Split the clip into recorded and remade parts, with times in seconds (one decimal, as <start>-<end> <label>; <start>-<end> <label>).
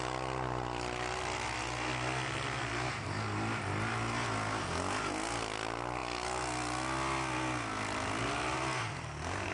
0.0-9.5 recorded